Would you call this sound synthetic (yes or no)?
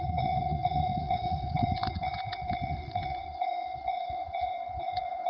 yes